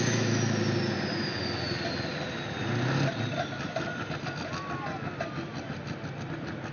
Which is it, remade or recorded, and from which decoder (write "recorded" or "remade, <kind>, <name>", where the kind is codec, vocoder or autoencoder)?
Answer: recorded